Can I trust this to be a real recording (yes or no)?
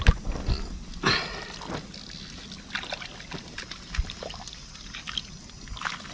yes